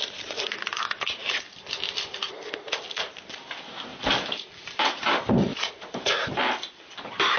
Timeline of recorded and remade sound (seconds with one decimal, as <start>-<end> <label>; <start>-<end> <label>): 0.0-3.9 recorded; 3.9-4.7 remade; 4.7-5.5 recorded; 5.5-6.4 remade; 6.4-7.4 recorded